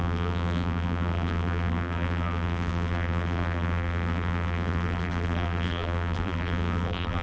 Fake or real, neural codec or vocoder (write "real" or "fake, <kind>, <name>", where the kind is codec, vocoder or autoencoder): fake, vocoder, BigVGAN v2